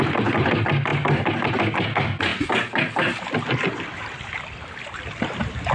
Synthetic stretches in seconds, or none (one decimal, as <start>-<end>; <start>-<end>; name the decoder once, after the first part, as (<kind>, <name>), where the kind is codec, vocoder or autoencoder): none